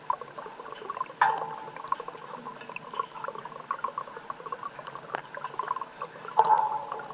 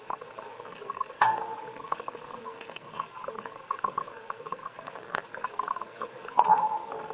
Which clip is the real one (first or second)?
first